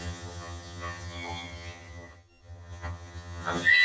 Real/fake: fake